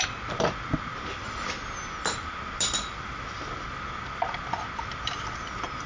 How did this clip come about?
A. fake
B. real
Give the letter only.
B